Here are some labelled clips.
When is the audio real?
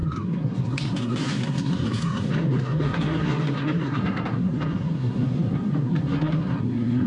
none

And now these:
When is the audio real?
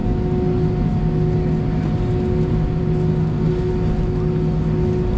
0.0-3.2; 3.7-5.2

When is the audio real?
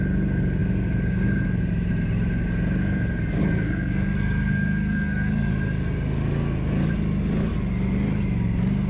0.0-3.4; 5.5-8.9